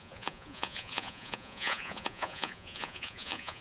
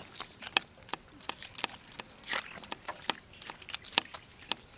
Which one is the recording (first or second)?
second